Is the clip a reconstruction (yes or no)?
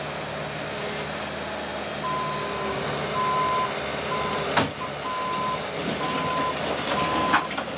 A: no